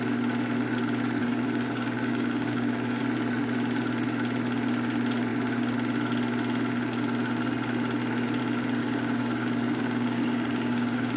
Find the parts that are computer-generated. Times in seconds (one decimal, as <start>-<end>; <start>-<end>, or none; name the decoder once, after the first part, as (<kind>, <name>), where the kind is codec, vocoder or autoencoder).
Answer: 1.2-3.0 (codec, DAC); 8.8-11.2